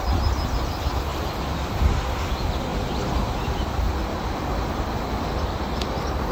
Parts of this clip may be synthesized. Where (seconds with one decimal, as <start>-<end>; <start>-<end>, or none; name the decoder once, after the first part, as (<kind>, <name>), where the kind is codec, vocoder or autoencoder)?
1.1-1.8 (vocoder, BigVGAN v2); 2.7-3.6